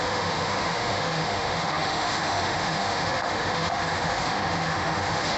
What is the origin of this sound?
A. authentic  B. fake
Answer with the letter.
B